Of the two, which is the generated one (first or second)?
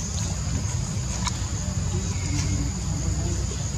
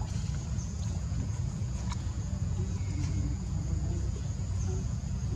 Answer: second